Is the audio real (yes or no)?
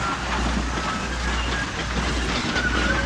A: yes